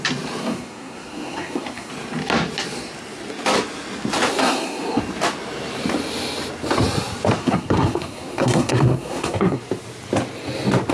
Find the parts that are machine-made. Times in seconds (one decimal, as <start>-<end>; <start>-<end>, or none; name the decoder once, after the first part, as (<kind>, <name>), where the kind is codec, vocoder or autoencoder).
0.4-1.9 (codec, SNAC); 4.4-5.0; 7.4-9.6